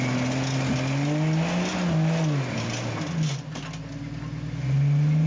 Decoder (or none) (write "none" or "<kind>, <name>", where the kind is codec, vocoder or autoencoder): none